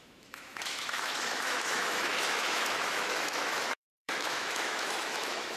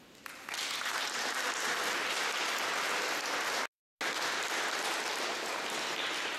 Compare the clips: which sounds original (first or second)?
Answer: second